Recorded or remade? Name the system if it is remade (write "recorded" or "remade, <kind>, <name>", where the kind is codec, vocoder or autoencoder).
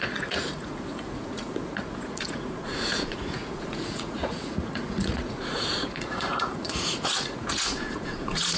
remade, vocoder, Vocos